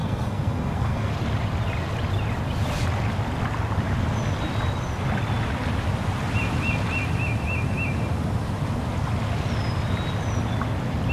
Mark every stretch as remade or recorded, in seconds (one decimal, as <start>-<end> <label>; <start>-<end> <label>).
0.0-1.1 remade; 1.1-11.1 recorded